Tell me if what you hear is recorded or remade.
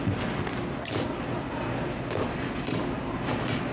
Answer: recorded